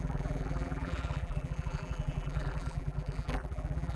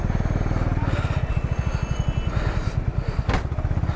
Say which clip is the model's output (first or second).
first